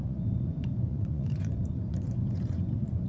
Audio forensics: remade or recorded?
remade